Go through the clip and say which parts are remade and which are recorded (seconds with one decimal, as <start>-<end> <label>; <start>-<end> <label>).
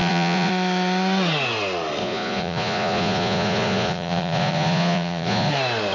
0.0-0.5 remade; 0.5-2.0 recorded; 2.0-5.5 remade; 5.5-5.9 recorded